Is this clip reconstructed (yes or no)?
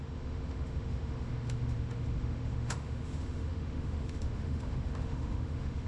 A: yes